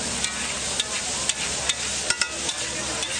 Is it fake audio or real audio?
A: real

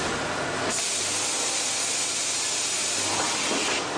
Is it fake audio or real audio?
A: real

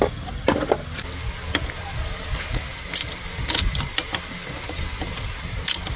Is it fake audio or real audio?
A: real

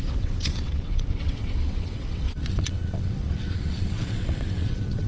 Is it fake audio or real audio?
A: fake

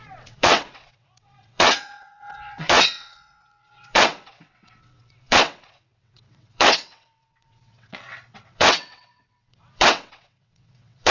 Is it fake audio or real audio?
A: fake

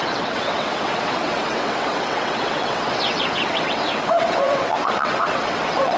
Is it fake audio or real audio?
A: fake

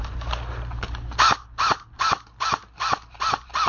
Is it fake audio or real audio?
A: real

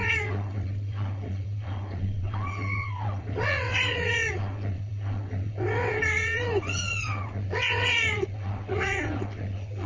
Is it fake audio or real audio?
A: fake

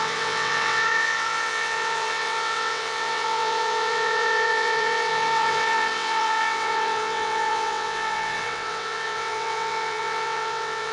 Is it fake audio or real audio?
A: fake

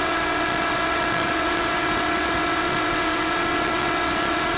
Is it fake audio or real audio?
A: fake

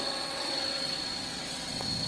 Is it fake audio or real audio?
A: fake